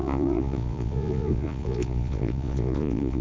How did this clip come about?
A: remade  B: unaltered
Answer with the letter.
A